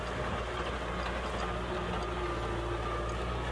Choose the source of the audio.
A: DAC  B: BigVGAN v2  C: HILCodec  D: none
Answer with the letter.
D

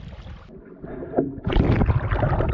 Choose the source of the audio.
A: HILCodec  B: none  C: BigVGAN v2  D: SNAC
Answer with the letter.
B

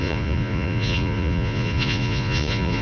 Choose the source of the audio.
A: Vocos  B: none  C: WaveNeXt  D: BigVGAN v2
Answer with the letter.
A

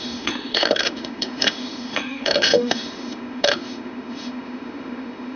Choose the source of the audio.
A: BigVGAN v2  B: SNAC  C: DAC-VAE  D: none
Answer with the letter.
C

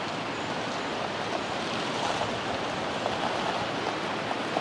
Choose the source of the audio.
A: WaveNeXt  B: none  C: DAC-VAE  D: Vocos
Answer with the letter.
B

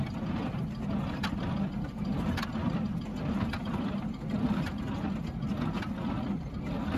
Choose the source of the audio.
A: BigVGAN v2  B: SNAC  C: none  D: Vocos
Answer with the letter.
C